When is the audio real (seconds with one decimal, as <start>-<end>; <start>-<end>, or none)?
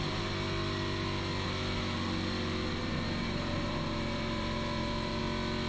0.0-2.8; 5.2-5.7